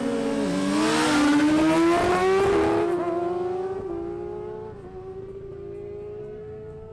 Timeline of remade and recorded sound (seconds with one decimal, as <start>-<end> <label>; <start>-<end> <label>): 0.0-6.2 recorded; 6.2-6.9 remade